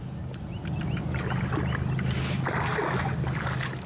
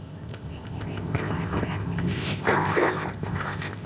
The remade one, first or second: second